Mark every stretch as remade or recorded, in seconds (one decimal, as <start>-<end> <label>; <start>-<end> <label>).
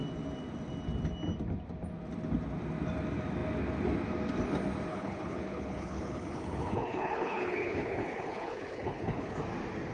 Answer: 0.0-4.9 recorded; 4.9-9.4 remade; 9.4-9.9 recorded